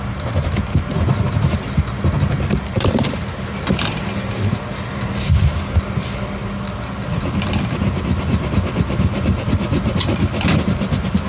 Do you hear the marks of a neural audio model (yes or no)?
no